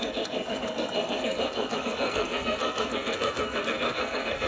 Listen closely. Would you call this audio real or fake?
fake